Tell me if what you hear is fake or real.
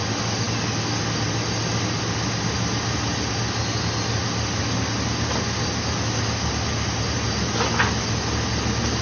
real